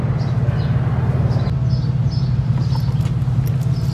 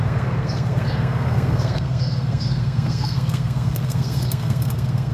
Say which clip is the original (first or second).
first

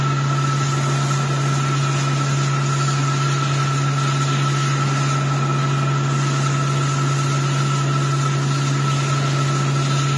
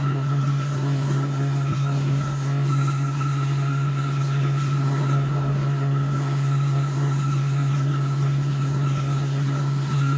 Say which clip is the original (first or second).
first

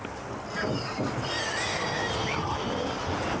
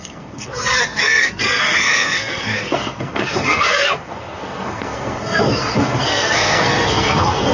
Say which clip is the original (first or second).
first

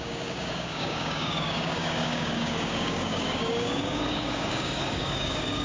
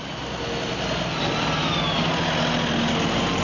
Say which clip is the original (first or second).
second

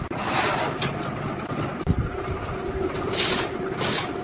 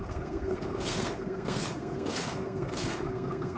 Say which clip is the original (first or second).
first